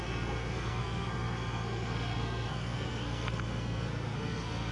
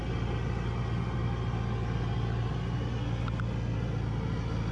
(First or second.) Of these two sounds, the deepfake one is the first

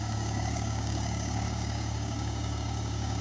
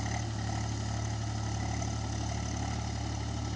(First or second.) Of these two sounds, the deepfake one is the first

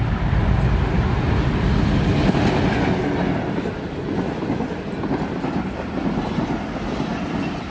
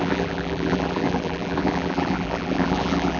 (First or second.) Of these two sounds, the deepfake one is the second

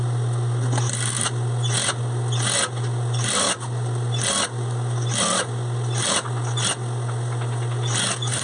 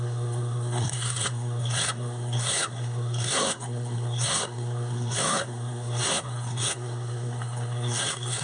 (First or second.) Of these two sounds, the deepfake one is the second